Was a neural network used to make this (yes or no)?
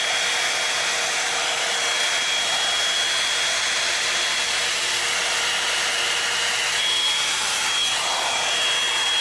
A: no